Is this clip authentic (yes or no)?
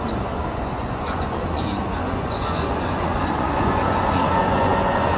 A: no